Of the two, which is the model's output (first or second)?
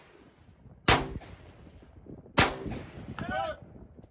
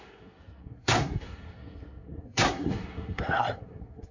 second